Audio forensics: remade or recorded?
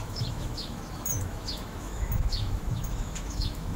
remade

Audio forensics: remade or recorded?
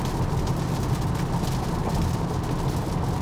recorded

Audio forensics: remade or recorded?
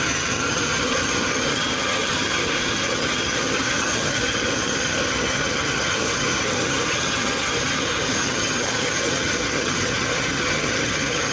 remade